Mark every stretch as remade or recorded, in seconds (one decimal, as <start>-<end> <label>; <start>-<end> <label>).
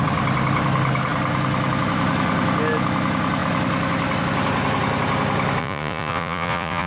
0.0-5.6 recorded; 5.6-6.9 remade